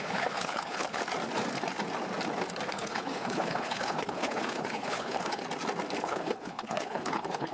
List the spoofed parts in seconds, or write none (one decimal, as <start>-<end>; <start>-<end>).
0.0-1.0; 2.7-5.4; 6.0-7.5